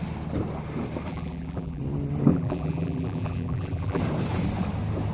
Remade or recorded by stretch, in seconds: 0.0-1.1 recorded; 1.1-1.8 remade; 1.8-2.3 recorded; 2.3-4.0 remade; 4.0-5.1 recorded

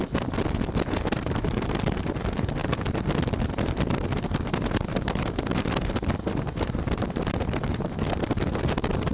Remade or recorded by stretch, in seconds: 0.0-2.6 remade; 2.6-3.5 recorded; 3.5-9.1 remade

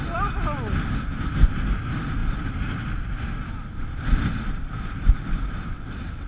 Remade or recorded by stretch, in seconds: 0.0-6.3 recorded

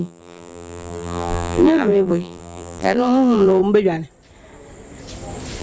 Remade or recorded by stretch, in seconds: 0.0-3.6 remade; 3.6-5.6 recorded